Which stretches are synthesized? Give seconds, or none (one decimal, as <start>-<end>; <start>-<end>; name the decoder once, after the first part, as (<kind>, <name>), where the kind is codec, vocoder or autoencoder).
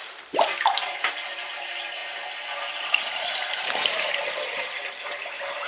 1.1-2.0 (vocoder, BigVGAN v2); 2.7-5.7